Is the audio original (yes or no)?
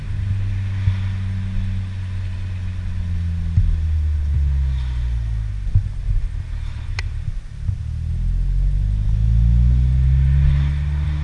yes